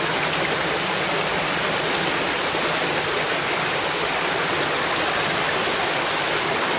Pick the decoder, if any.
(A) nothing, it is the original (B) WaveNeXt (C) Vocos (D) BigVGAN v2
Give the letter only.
A